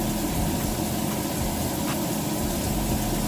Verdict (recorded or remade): recorded